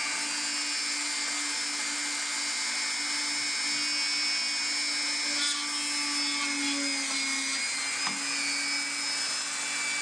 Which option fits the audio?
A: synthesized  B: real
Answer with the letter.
B